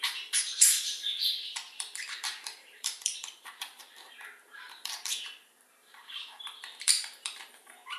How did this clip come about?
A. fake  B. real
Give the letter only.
A